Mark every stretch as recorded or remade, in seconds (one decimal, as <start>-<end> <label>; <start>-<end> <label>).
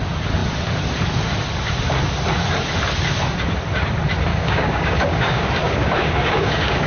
0.0-4.3 recorded; 4.3-6.9 remade